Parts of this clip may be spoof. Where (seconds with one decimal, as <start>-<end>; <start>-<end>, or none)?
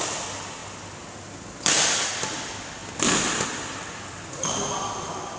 none